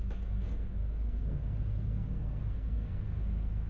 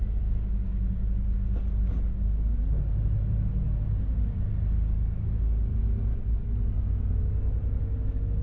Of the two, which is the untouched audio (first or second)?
second